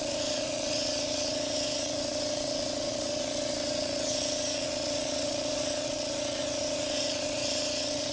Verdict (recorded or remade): remade